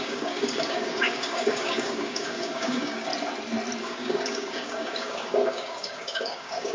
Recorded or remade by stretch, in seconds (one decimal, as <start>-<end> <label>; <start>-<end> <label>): 0.0-3.1 remade; 3.1-3.8 recorded; 3.8-6.7 remade